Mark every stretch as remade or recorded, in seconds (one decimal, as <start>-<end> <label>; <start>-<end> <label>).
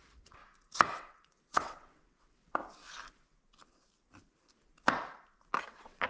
0.0-0.4 remade; 0.4-1.0 recorded; 1.0-2.6 remade; 2.6-5.6 recorded; 5.6-6.1 remade